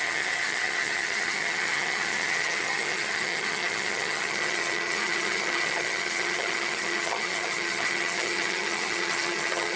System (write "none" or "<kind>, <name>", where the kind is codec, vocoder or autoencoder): vocoder, HiFi-GAN